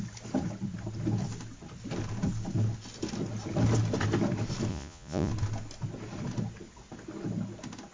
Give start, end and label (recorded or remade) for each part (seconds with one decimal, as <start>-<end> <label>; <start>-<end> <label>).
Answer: 0.0-4.7 recorded; 4.7-5.3 remade; 5.3-7.9 recorded